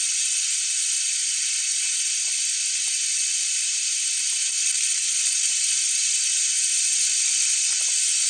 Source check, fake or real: real